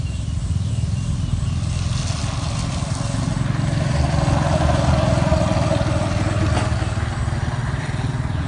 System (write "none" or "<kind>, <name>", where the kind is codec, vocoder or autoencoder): none